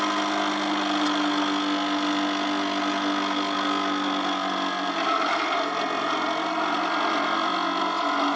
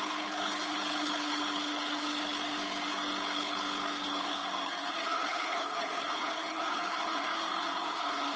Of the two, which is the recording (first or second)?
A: first